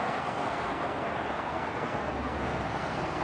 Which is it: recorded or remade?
remade